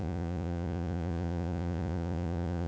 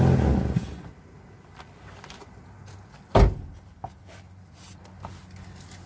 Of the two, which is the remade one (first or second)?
first